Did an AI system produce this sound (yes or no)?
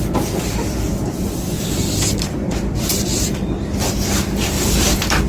yes